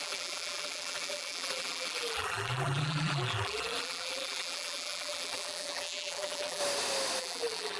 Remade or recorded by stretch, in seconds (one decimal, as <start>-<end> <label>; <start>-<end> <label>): 0.0-6.6 remade; 6.6-7.2 recorded; 7.2-7.8 remade